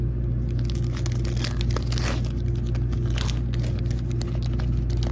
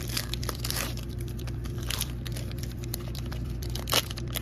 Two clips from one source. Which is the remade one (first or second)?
second